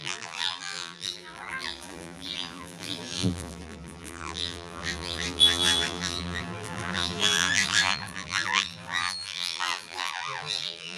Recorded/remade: remade